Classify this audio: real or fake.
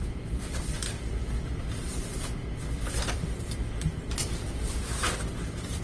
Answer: fake